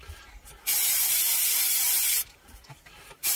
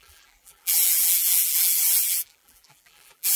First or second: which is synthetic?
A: second